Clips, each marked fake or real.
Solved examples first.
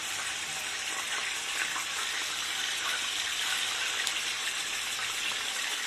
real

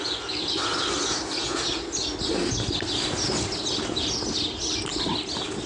real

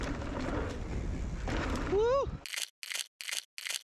real